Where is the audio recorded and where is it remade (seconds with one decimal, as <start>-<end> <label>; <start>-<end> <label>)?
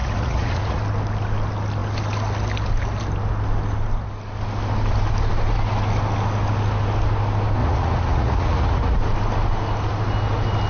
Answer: 0.0-0.8 remade; 0.8-7.6 recorded; 7.6-9.0 remade; 9.0-10.7 recorded